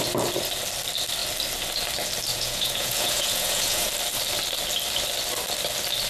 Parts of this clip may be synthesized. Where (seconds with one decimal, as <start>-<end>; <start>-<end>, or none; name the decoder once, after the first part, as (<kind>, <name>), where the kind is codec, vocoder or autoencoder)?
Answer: 2.3-3.9 (vocoder, Vocos)